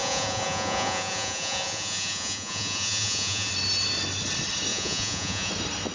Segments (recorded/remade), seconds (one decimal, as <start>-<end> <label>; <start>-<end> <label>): 0.0-3.5 remade; 3.5-4.7 recorded; 4.7-5.5 remade; 5.5-5.9 recorded